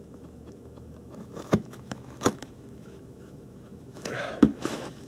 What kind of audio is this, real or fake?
fake